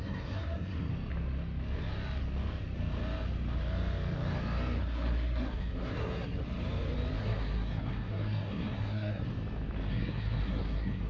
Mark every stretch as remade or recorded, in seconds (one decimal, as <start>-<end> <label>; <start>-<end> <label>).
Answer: 0.0-0.9 remade; 0.9-4.8 recorded; 4.8-6.4 remade; 6.4-7.2 recorded; 7.2-9.3 remade; 9.3-9.9 recorded; 9.9-11.1 remade